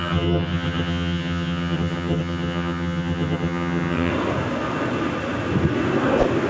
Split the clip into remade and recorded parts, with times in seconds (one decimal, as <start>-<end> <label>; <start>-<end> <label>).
0.0-4.1 remade; 4.1-6.5 recorded